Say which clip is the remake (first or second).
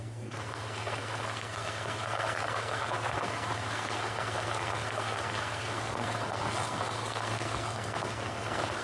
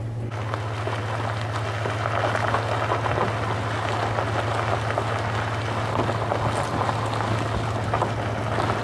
first